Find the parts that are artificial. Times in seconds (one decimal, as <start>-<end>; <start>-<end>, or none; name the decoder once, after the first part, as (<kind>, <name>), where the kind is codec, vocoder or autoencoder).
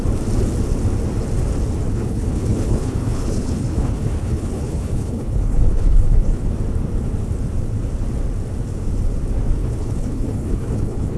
1.9-6.5 (codec, HILCodec); 9.6-11.2